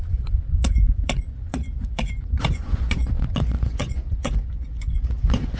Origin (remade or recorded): remade